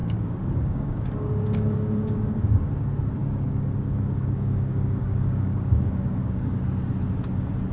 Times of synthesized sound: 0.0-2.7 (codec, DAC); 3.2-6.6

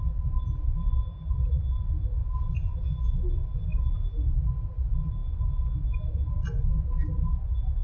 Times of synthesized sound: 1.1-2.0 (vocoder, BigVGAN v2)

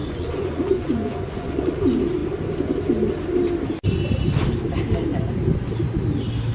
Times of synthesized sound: 0.0-1.8 (vocoder, Vocos)

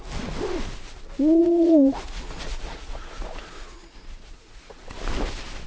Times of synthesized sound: 1.4-4.8 (vocoder, Vocos)